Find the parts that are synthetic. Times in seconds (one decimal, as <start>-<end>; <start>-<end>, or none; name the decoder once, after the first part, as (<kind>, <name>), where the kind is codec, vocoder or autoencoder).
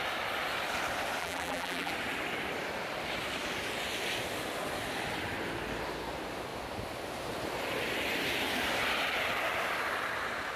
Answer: 1.2-1.9 (vocoder, BigVGAN v2)